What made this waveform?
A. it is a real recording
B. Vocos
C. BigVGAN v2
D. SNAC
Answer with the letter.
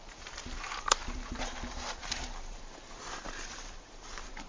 C